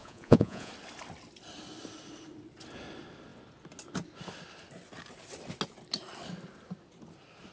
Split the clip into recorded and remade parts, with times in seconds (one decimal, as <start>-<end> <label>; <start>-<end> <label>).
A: 0.0-0.7 remade; 0.7-7.5 recorded